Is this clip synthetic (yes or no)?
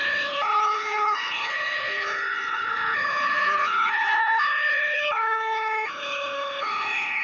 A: yes